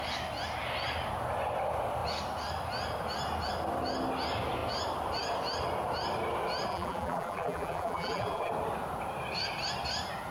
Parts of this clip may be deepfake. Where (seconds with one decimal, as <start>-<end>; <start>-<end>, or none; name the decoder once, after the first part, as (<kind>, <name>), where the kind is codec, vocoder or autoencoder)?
6.7-8.5 (vocoder, BigVGAN v2)